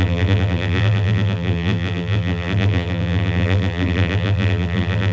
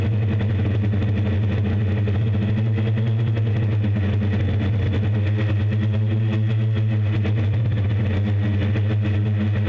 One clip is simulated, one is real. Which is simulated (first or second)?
first